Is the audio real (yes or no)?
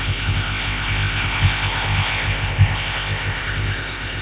no